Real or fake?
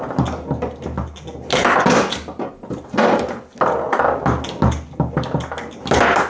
real